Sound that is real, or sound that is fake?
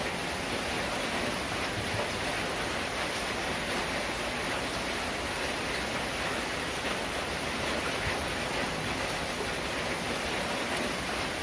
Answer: real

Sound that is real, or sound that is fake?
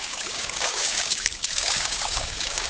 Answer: fake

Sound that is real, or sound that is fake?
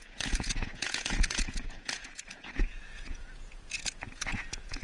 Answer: fake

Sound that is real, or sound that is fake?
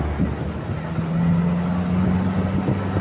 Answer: real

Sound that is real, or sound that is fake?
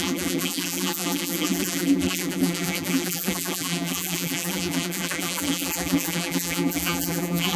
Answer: fake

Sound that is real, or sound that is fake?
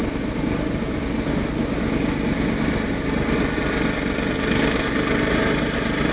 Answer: real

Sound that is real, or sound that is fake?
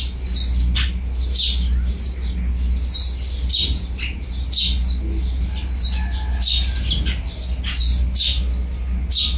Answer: real